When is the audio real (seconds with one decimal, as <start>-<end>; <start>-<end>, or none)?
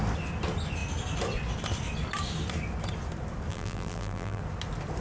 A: 0.0-3.5; 4.4-5.0